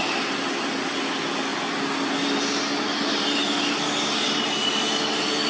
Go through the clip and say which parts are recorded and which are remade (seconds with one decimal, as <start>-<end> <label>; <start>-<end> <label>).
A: 0.0-5.5 recorded